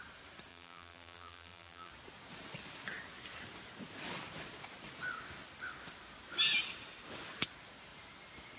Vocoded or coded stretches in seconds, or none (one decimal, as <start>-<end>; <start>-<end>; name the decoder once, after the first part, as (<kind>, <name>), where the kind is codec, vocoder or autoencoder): 0.5-1.9 (vocoder, BigVGAN v2)